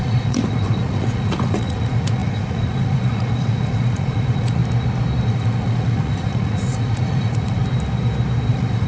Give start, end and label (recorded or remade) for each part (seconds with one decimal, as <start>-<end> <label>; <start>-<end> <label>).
0.0-4.6 remade; 4.6-5.3 recorded; 5.3-7.6 remade; 7.6-8.5 recorded; 8.5-8.9 remade